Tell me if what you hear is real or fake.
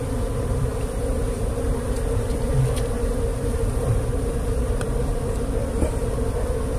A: fake